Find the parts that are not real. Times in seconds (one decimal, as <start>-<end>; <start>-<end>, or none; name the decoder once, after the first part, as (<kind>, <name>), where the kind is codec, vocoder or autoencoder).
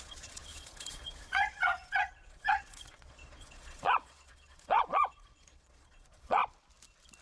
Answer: 0.0-6.4 (vocoder, Vocos)